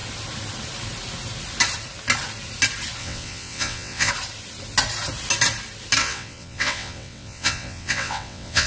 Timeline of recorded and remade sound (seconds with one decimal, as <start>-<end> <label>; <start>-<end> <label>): 0.0-3.0 recorded; 3.0-4.1 remade; 4.1-6.0 recorded; 6.0-8.7 remade